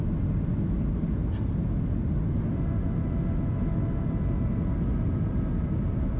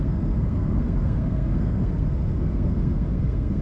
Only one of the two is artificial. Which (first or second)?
second